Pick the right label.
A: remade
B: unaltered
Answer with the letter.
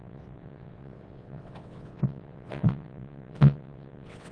A